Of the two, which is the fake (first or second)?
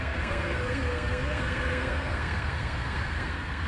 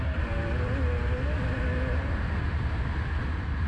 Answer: first